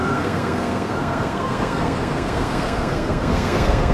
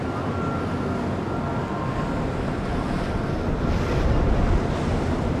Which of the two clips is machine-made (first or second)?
first